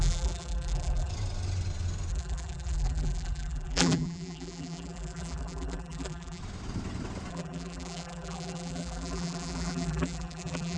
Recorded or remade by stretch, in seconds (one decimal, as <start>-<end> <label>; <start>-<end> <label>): 0.0-1.1 remade; 1.1-2.1 recorded; 2.1-6.4 remade; 6.4-7.3 recorded; 7.3-10.8 remade